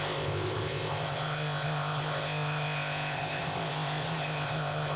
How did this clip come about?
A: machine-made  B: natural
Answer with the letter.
A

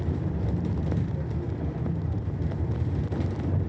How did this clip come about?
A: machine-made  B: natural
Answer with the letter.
B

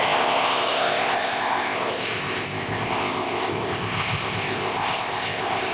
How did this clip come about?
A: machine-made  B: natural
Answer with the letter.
A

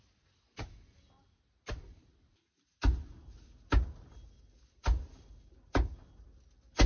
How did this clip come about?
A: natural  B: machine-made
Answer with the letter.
A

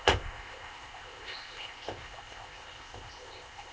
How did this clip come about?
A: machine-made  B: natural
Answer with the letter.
A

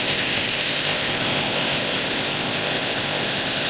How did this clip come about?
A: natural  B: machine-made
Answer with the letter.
B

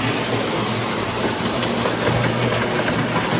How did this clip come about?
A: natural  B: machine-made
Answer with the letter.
A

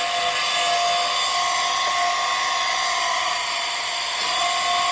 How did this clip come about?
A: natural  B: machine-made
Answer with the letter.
A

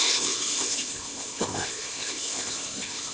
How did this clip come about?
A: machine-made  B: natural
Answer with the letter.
A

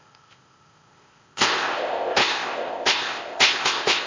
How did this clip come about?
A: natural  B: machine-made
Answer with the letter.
B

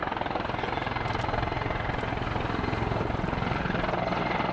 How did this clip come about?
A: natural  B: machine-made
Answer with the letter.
A